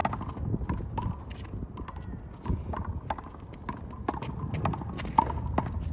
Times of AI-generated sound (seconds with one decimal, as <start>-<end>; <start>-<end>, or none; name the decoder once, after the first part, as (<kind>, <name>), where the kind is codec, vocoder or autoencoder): none